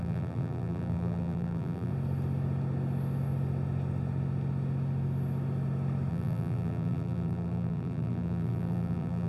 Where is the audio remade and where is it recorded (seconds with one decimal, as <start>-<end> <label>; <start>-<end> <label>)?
0.0-1.9 remade; 1.9-6.1 recorded; 6.1-9.3 remade